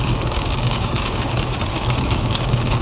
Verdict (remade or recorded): remade